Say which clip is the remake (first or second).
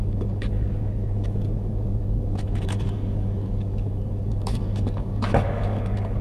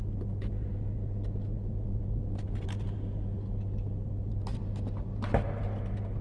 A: first